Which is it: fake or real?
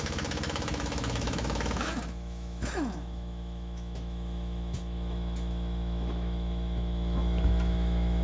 fake